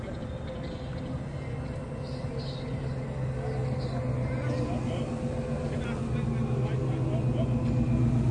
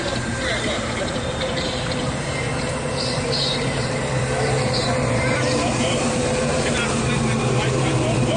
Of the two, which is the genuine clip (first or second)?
first